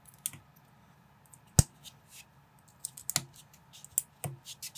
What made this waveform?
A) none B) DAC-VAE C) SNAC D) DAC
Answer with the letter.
A